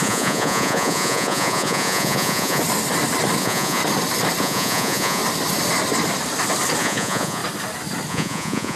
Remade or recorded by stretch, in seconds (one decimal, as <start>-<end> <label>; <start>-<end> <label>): 0.0-2.6 remade; 2.6-3.4 recorded; 3.4-3.8 remade; 3.8-4.4 recorded; 4.4-5.2 remade; 5.2-6.8 recorded; 6.8-7.4 remade; 7.4-8.1 recorded; 8.1-8.8 remade